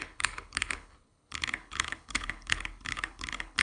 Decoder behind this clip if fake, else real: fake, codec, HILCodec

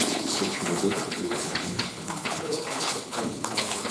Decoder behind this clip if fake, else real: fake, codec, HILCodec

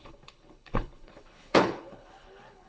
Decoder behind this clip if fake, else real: fake, codec, HILCodec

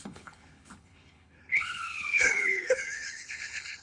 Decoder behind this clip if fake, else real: fake, codec, HILCodec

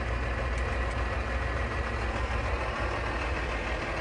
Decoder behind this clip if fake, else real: real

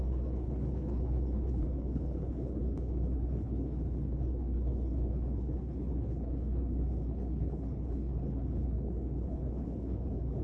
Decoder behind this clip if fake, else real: fake, codec, HILCodec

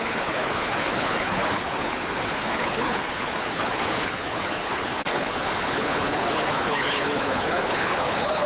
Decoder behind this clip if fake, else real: fake, codec, HILCodec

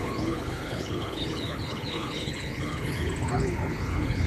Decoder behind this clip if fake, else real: fake, codec, HILCodec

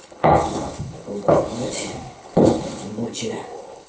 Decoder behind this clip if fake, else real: fake, codec, HILCodec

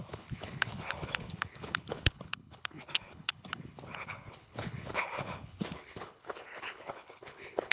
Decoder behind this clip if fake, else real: fake, codec, HILCodec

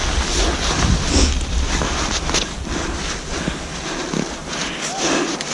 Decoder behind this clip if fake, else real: real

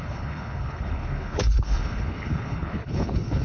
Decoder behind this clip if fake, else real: fake, codec, HILCodec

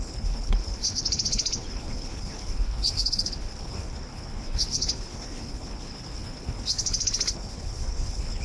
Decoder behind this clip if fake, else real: fake, codec, HILCodec